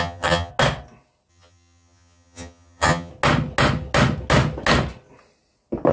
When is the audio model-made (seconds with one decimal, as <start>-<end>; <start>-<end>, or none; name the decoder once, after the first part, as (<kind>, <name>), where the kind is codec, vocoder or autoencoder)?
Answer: 0.0-0.5 (vocoder, HiFi-GAN); 1.3-3.1